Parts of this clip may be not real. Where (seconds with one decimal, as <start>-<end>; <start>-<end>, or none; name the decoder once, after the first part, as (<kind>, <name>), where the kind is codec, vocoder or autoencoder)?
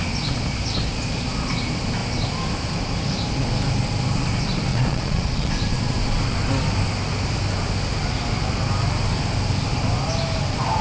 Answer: 4.7-5.5 (vocoder, Vocos)